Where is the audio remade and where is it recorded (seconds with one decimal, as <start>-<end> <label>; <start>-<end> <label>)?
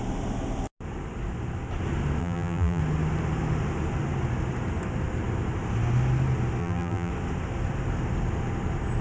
0.0-2.2 recorded; 2.2-2.8 remade; 2.8-6.6 recorded; 6.6-7.1 remade; 7.1-9.0 recorded